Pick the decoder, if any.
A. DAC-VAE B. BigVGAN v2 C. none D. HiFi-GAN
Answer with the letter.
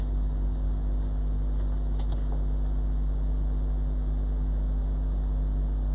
C